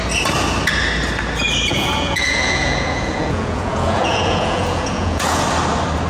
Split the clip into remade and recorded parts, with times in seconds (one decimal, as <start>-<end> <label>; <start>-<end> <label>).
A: 0.0-1.7 recorded; 1.7-5.4 remade; 5.4-6.1 recorded